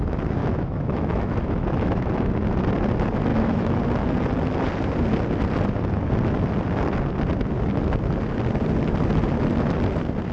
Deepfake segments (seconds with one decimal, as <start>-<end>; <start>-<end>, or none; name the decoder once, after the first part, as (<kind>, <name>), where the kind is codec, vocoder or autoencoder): 0.4-2.3 (autoencoder, DAC-VAE); 3.3-3.8